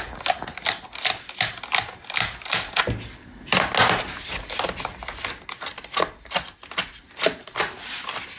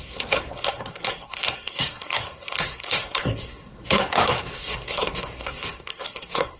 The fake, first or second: second